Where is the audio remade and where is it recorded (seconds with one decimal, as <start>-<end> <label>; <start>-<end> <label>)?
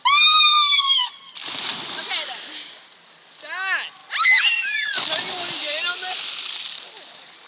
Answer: 0.0-0.5 recorded; 0.5-1.1 remade; 1.1-7.5 recorded